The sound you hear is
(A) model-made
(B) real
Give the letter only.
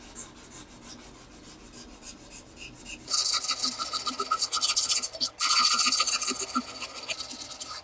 B